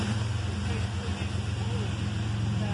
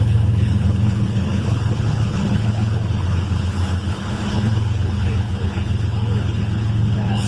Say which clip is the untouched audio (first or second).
first